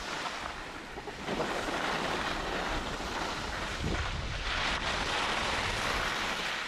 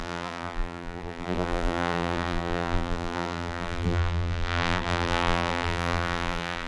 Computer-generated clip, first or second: second